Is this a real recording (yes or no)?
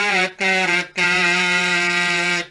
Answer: no